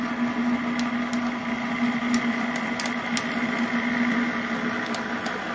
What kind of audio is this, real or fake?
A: real